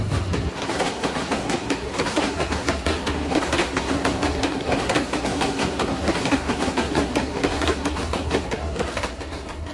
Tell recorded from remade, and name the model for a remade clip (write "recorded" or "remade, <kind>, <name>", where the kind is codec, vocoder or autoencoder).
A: remade, codec, SNAC